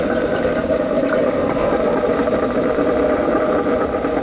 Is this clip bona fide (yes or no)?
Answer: no